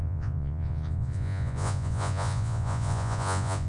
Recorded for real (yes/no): no